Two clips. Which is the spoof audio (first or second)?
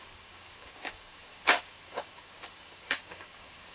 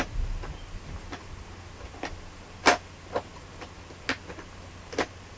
first